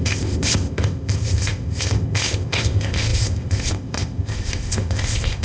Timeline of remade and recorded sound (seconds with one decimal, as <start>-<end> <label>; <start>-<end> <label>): 0.0-5.4 remade